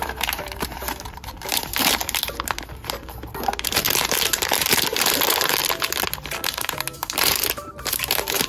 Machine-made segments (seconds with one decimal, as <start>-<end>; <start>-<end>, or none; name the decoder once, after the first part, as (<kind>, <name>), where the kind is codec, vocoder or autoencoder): 0.0-5.6 (vocoder, BigVGAN v2); 6.4-8.5